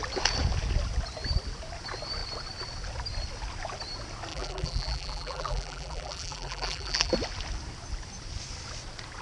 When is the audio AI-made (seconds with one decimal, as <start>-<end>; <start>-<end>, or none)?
4.3-7.1